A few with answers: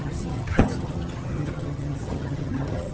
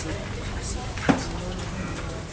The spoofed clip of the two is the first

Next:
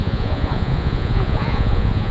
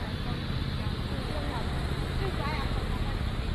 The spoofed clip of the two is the first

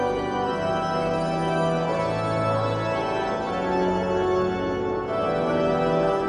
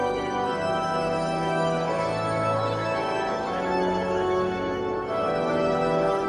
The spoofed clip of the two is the second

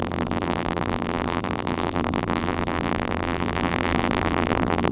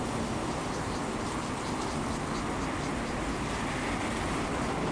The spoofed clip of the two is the first